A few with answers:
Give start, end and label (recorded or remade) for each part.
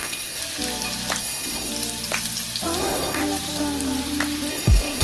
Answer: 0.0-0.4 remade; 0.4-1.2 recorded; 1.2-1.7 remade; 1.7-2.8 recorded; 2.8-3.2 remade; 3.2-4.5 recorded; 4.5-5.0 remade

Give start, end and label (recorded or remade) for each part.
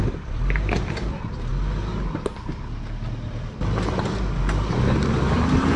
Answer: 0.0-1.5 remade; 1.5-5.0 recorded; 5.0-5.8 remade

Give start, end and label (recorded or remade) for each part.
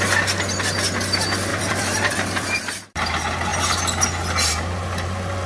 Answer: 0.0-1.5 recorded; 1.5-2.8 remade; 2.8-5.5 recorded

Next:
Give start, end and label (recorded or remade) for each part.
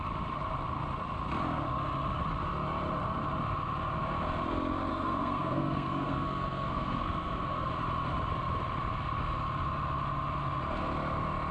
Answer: 0.0-4.9 recorded; 4.9-7.7 remade; 7.7-11.5 recorded